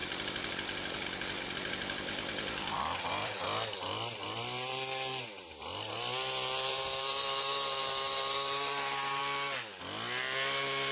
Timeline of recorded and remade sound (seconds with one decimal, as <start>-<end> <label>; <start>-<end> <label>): 0.0-3.4 remade; 3.4-6.7 recorded; 6.7-9.2 remade; 9.2-10.9 recorded